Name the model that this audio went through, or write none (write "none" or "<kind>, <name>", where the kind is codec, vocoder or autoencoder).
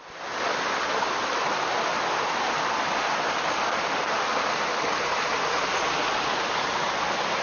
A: none